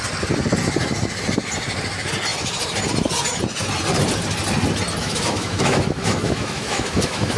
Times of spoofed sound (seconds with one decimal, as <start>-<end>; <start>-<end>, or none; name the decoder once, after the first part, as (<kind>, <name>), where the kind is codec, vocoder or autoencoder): 5.0-7.4 (autoencoder, DAC-VAE)